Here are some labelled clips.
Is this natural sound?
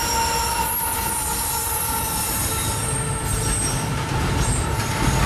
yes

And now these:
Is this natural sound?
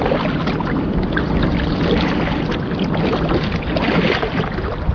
yes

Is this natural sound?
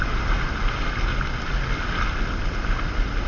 yes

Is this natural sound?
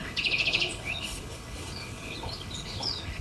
no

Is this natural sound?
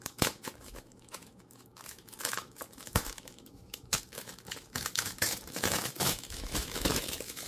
no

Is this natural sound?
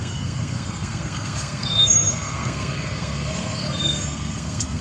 no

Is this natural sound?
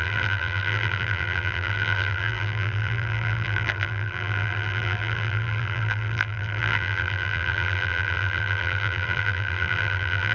no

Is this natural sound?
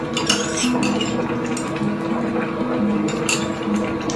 yes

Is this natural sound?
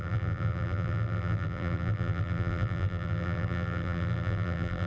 no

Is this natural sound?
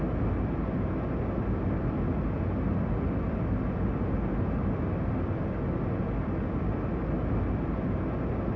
yes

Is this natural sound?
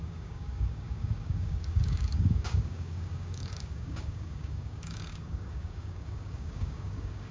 no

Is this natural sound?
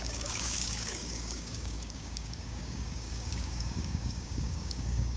no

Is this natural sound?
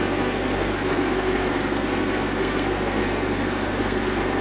no